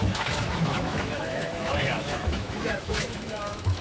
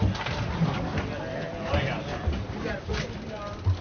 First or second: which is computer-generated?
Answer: first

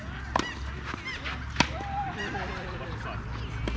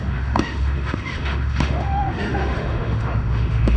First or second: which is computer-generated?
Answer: second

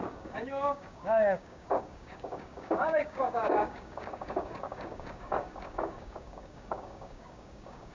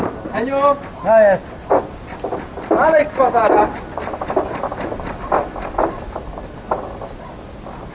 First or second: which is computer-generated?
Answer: first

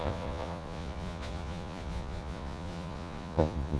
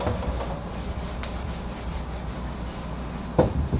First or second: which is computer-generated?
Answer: first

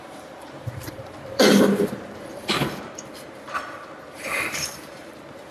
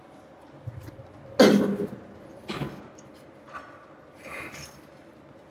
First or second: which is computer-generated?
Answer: first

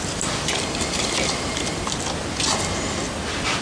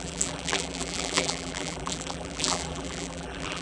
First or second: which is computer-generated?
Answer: second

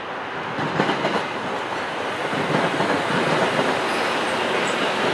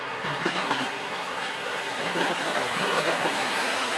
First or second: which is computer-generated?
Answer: second